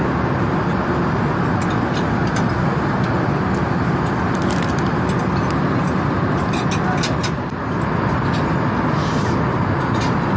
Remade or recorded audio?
recorded